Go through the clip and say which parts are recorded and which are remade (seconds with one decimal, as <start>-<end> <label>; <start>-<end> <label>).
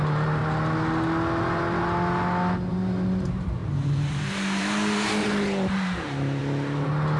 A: 0.0-0.4 remade; 0.4-2.7 recorded; 2.7-6.4 remade; 6.4-7.2 recorded